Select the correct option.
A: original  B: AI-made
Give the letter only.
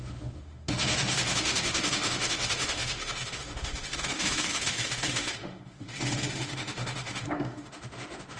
B